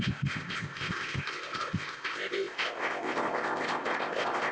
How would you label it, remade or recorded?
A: remade